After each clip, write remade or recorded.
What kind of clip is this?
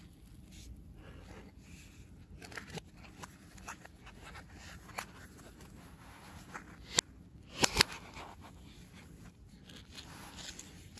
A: recorded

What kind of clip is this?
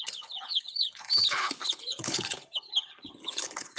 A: remade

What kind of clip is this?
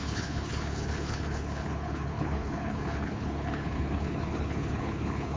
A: remade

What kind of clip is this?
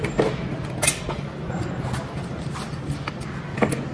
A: recorded